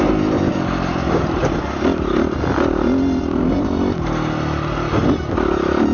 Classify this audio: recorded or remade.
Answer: recorded